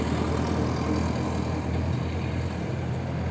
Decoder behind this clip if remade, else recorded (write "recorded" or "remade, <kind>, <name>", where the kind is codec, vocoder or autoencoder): recorded